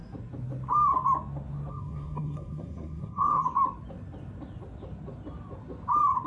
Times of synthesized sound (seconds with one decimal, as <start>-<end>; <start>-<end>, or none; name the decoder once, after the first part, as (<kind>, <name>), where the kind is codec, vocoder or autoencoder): 1.7-3.4 (codec, SNAC)